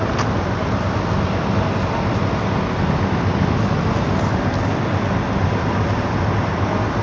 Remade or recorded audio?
recorded